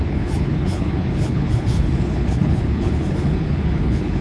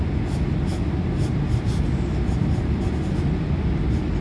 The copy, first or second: first